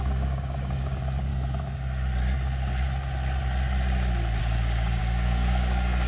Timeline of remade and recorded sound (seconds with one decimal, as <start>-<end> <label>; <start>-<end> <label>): 0.0-1.3 remade; 1.3-4.4 recorded; 4.4-6.1 remade